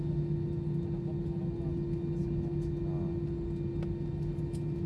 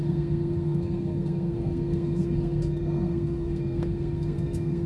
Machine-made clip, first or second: second